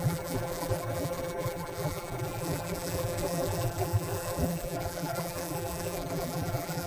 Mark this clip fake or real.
fake